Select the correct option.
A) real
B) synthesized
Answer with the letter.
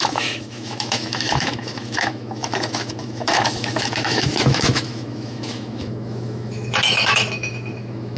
B